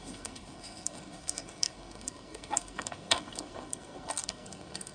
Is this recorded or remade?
remade